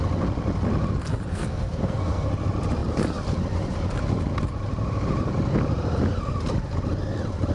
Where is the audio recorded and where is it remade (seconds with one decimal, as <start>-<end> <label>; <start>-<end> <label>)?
0.0-1.3 recorded; 1.3-2.3 remade; 2.3-7.5 recorded

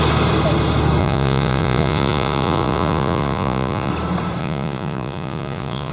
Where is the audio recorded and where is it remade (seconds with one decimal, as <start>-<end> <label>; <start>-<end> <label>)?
0.0-1.0 recorded; 1.0-3.9 remade; 3.9-4.4 recorded; 4.4-5.9 remade